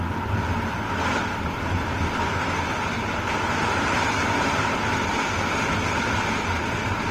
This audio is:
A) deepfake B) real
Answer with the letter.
B